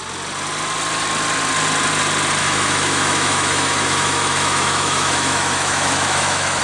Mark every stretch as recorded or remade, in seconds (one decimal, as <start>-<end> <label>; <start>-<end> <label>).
0.0-2.4 recorded; 2.4-6.6 remade